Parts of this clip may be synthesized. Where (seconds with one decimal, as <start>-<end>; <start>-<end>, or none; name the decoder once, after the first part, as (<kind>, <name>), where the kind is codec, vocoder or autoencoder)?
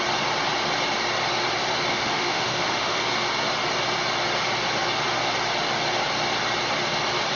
1.9-3.0 (autoencoder, DAC-VAE)